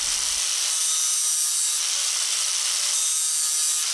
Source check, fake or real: real